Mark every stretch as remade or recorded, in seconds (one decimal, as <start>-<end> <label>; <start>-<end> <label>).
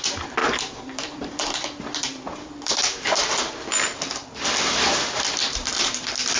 0.0-0.4 recorded; 0.4-3.5 remade; 3.5-5.4 recorded; 5.4-6.4 remade